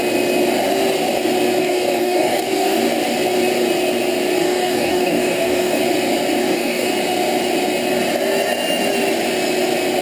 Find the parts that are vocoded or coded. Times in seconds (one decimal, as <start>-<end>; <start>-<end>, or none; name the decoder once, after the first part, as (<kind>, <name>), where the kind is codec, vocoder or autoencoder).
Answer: 1.6-2.8 (codec, DAC); 4.4-5.8; 6.4-6.9